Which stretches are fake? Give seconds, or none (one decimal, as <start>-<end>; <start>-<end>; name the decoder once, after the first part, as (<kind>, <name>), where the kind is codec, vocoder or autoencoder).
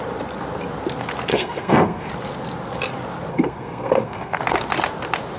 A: 1.3-2.1 (codec, SNAC); 3.3-4.4